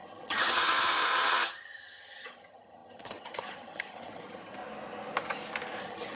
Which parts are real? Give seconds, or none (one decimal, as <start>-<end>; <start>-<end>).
4.6-5.8